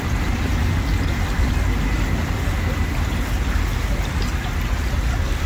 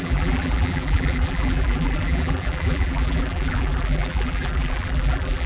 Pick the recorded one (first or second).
first